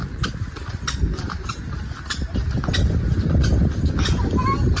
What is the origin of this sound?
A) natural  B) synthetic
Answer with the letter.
A